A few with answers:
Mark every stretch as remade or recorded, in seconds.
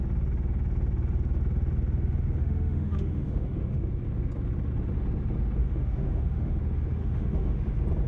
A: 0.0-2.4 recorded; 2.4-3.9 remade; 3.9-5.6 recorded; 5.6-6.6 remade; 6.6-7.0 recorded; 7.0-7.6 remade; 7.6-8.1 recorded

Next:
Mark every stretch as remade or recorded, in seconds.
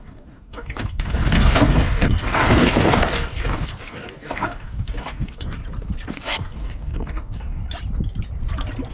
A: 0.0-5.6 remade; 5.6-6.1 recorded; 6.1-7.6 remade; 7.6-8.9 recorded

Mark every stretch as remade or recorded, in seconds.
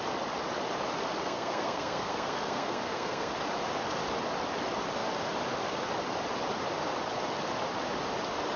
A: 0.0-1.2 recorded; 1.2-3.3 remade; 3.3-8.6 recorded